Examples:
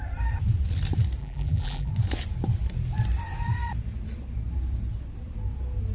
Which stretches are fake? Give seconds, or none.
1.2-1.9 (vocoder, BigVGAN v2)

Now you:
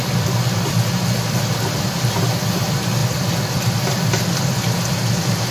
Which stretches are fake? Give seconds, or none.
0.0-1.4 (vocoder, BigVGAN v2); 3.0-4.6

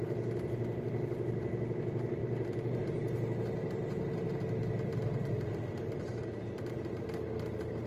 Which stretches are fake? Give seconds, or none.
2.2-2.8 (vocoder, BigVGAN v2); 4.9-7.3